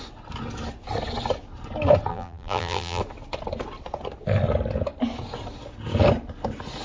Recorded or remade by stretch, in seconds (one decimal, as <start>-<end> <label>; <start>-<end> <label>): 0.0-2.1 recorded; 2.1-3.0 remade; 3.0-6.8 recorded